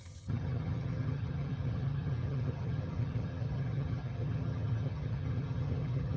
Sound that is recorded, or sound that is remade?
remade